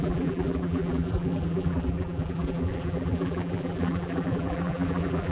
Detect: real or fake fake